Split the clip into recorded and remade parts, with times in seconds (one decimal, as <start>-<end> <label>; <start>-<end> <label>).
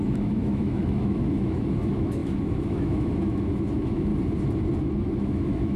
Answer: 0.0-4.1 remade; 4.1-5.2 recorded; 5.2-5.8 remade